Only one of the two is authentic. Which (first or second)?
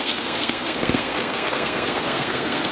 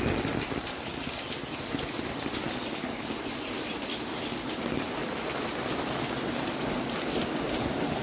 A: second